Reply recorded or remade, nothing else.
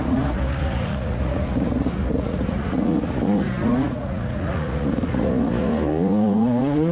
remade